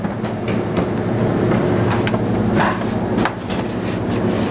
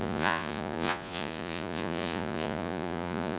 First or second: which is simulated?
second